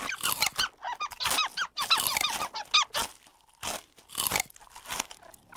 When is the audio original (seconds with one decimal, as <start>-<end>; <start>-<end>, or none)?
0.0-5.6